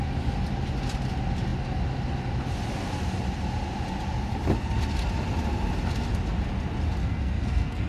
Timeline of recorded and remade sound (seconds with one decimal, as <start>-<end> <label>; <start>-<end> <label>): 0.0-7.0 recorded; 7.0-7.9 remade